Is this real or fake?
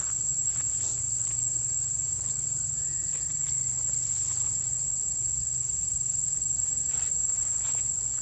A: real